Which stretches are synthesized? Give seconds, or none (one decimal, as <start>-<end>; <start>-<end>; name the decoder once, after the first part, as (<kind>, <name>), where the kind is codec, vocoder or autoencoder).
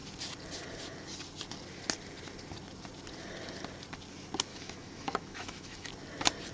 4.5-5.9 (autoencoder, DAC-VAE)